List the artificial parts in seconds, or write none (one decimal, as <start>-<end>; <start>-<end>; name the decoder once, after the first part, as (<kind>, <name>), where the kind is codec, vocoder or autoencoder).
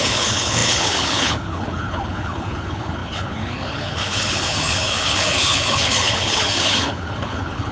0.0-7.7 (codec, HILCodec)